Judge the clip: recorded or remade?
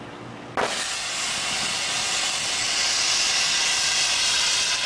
recorded